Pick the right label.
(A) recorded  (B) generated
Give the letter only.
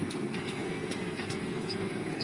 B